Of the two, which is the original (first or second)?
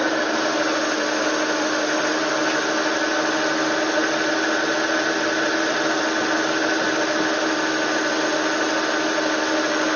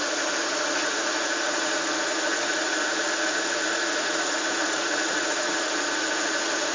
first